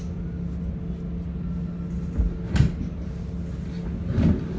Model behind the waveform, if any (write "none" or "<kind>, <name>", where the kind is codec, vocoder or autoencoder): none